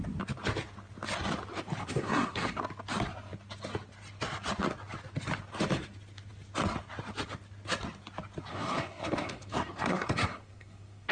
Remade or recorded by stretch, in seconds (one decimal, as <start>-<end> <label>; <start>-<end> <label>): 0.0-1.8 recorded; 1.8-2.6 remade; 2.6-8.5 recorded; 8.5-11.1 remade